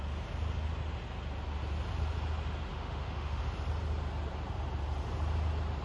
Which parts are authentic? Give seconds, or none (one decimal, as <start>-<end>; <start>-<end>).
0.0-2.7; 3.4-5.8